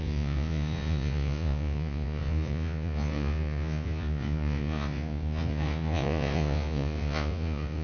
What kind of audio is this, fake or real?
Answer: fake